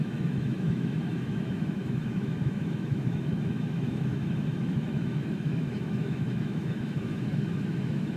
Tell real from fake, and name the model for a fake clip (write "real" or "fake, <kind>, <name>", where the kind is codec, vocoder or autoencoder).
fake, autoencoder, DAC-VAE